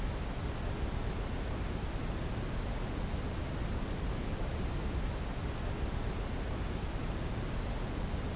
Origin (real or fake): real